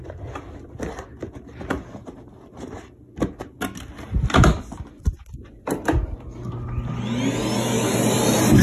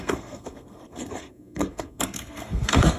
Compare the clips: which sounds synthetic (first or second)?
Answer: second